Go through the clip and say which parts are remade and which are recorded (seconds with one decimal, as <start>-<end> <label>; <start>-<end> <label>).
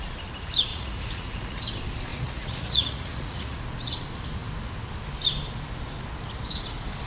0.0-0.7 recorded; 0.7-1.6 remade; 1.6-2.1 recorded; 2.1-3.6 remade; 3.6-7.1 recorded